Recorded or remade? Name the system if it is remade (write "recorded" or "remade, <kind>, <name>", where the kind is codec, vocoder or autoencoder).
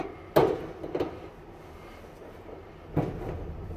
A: recorded